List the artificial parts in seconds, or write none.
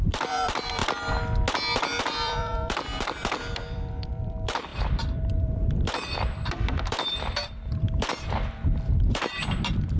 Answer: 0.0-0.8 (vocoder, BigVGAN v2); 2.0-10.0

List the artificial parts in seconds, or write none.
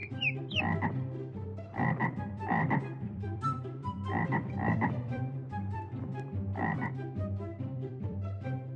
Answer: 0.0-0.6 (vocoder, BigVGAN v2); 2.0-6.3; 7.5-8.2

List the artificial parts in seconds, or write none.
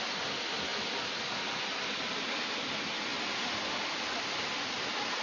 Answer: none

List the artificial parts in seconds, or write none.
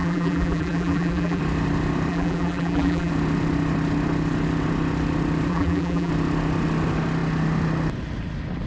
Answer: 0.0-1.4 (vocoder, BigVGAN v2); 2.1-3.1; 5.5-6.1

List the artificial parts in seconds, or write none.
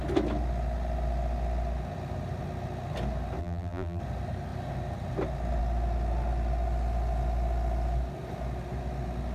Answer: 3.4-4.0 (vocoder, BigVGAN v2)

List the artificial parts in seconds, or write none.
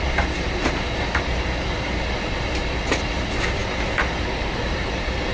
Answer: 0.0-5.3 (vocoder, BigVGAN v2)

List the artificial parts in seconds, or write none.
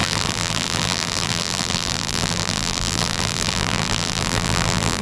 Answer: 0.0-5.0 (vocoder, BigVGAN v2)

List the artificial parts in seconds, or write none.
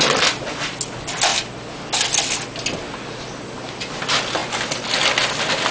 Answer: none